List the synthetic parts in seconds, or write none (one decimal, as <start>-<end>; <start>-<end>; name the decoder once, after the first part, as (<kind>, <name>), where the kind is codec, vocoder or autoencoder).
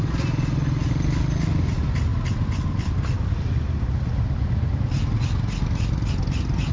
none